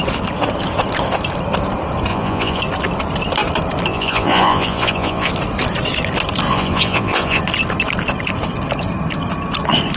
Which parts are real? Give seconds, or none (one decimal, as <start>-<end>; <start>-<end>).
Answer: 0.0-2.1; 2.6-3.9; 5.3-6.5; 7.4-10.0

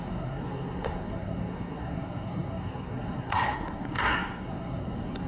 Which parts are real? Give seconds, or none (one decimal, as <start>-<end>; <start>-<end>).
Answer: none

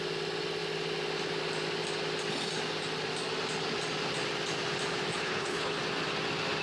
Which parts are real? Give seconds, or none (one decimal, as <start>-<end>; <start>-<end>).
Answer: 0.0-5.1; 5.8-6.6

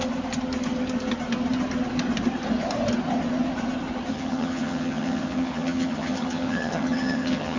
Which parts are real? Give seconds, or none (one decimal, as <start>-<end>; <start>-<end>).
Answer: 0.0-4.1